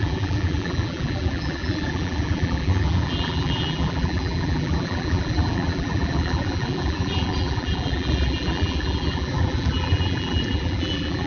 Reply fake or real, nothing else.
fake